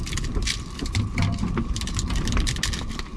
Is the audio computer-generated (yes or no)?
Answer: no